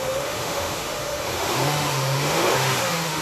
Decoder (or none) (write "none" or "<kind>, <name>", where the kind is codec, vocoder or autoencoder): autoencoder, DAC-VAE